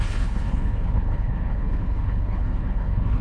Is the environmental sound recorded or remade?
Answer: remade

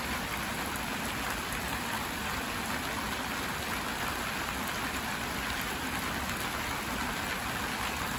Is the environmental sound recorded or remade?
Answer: recorded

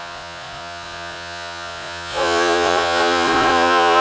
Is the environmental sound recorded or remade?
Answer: remade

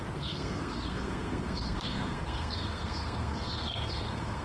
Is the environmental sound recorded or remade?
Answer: remade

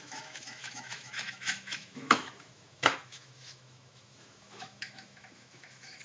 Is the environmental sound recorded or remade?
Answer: remade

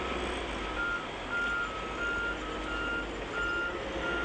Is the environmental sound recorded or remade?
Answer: recorded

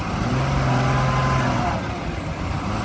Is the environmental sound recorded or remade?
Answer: recorded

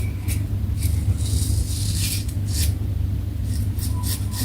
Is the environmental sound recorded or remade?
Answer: recorded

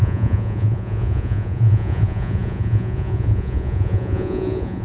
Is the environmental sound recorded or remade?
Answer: remade